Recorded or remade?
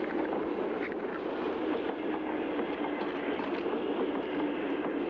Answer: recorded